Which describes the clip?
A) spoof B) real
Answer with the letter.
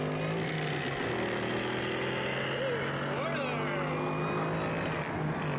B